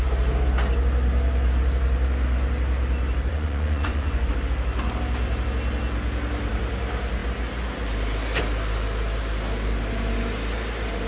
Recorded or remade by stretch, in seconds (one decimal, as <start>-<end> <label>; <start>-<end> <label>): 0.0-3.3 recorded; 3.3-4.3 remade; 4.3-11.1 recorded

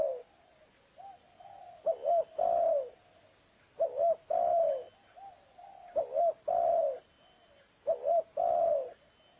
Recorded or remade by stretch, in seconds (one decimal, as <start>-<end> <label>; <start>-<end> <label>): 0.0-9.4 recorded

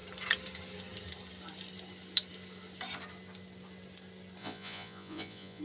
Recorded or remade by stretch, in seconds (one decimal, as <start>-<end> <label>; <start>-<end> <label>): 0.0-4.4 recorded; 4.4-5.6 remade

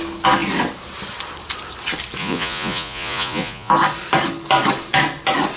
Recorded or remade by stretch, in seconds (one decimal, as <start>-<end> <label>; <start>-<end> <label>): 0.0-2.2 recorded; 2.2-3.7 remade; 3.7-5.6 recorded